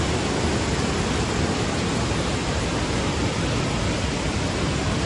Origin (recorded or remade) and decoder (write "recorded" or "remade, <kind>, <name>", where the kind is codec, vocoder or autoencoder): recorded